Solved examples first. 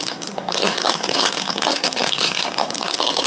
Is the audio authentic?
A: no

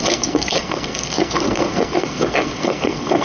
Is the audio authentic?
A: no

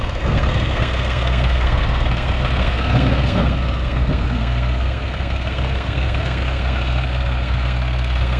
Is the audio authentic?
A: no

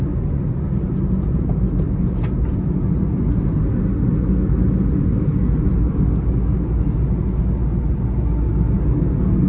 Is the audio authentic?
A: yes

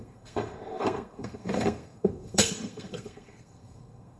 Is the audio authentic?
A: no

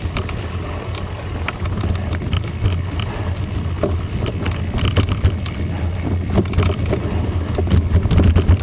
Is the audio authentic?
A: yes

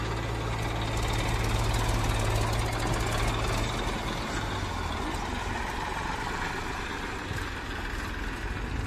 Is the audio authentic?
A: yes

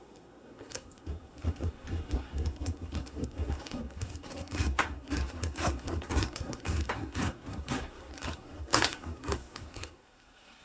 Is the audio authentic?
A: no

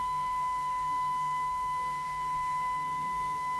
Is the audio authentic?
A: no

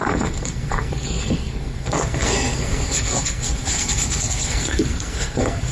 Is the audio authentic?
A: no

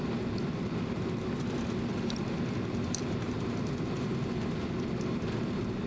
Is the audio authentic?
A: yes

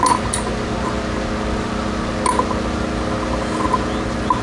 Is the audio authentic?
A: yes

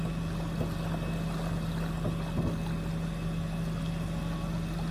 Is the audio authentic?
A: yes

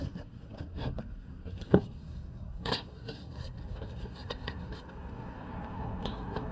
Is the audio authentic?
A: no